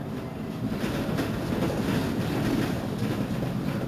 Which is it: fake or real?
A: real